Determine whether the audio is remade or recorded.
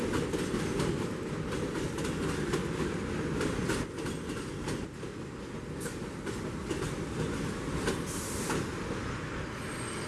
recorded